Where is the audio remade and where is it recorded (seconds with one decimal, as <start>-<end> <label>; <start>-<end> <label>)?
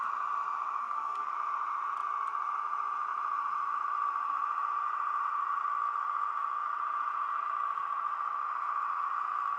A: 0.0-0.8 recorded; 0.8-1.3 remade; 1.3-9.6 recorded